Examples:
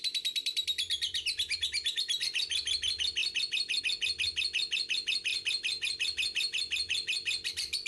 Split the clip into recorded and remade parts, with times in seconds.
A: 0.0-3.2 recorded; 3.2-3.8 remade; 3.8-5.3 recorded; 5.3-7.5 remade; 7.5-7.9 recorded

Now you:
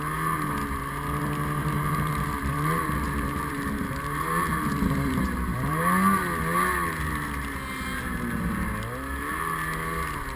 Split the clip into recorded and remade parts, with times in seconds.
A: 0.0-1.6 recorded; 1.6-5.8 remade; 5.8-10.4 recorded

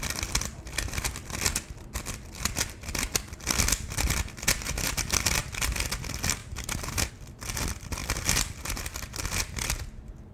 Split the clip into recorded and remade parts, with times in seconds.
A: 0.0-6.4 recorded; 6.4-7.1 remade; 7.1-10.3 recorded

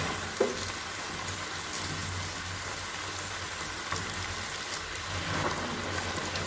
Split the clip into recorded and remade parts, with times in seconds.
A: 0.0-6.5 recorded

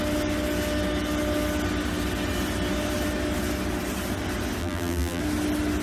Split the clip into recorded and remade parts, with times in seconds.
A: 0.0-4.6 recorded; 4.6-5.2 remade; 5.2-5.8 recorded

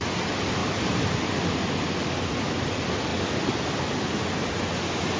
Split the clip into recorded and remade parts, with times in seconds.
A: 0.0-3.1 recorded; 3.1-3.8 remade; 3.8-5.2 recorded

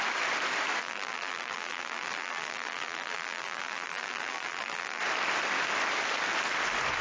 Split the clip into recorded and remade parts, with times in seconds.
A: 0.0-0.8 recorded; 0.8-5.0 remade; 5.0-7.0 recorded

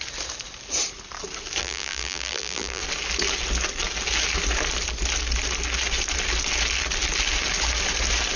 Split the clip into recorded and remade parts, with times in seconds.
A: 0.0-1.6 recorded; 1.6-2.8 remade; 2.8-8.4 recorded